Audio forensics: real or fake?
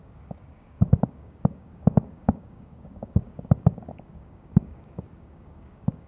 fake